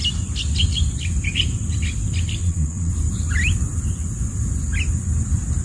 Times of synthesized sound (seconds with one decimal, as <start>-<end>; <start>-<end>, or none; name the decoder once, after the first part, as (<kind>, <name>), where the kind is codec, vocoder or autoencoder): 2.4-2.9 (vocoder, Vocos)